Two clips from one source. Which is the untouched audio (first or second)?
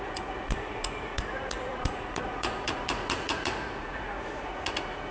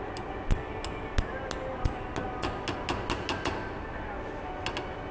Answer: second